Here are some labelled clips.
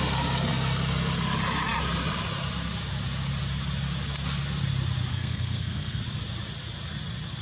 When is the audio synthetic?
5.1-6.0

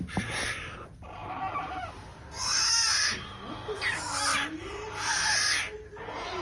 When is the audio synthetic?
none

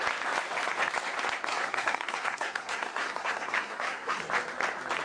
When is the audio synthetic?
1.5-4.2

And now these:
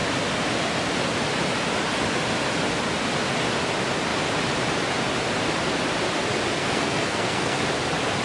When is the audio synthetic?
6.6-7.6